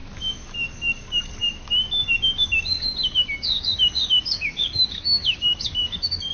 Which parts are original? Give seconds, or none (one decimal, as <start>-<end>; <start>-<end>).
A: none